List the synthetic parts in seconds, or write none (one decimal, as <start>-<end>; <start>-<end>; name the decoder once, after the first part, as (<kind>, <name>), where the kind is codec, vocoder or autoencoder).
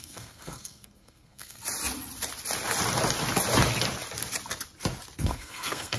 0.0-1.6 (codec, SNAC); 5.2-6.0